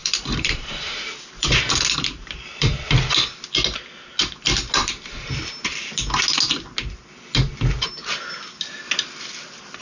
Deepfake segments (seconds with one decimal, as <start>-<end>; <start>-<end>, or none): 0.0-2.8